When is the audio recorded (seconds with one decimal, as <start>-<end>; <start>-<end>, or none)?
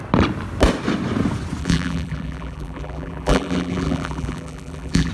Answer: 0.0-1.6